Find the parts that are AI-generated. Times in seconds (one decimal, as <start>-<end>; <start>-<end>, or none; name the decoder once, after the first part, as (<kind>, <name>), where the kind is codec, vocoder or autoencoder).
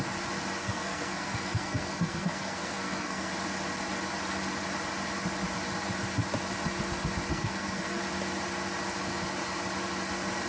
0.6-3.3 (codec, SNAC); 7.3-8.0